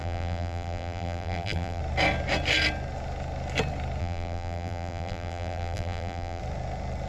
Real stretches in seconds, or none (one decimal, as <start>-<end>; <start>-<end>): 1.8-4.0; 6.4-7.1